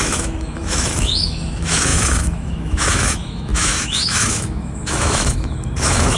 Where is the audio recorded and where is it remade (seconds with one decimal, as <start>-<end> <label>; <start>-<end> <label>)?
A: 0.0-6.2 remade

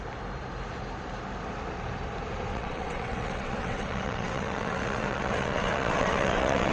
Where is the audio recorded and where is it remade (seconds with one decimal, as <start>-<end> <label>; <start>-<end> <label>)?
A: 0.0-2.5 recorded; 2.5-6.7 remade

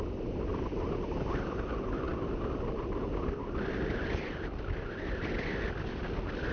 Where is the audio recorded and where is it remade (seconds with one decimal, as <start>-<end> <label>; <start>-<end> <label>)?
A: 0.0-6.5 recorded

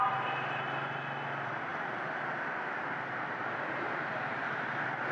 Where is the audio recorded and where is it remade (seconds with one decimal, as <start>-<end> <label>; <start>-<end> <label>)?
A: 0.0-1.7 recorded; 1.7-5.1 remade

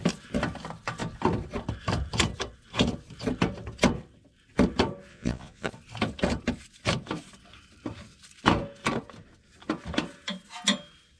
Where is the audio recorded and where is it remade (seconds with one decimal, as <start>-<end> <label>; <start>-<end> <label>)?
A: 0.0-5.1 recorded; 5.1-5.7 remade; 5.7-11.2 recorded

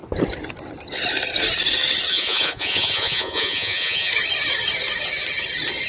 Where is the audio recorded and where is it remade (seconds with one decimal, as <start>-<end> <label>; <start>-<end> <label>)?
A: 0.0-2.1 recorded; 2.1-4.1 remade; 4.1-5.9 recorded